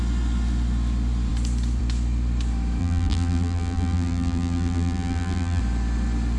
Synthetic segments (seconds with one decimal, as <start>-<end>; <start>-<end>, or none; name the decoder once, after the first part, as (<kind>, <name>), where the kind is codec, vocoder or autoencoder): 2.8-5.6 (vocoder, BigVGAN v2)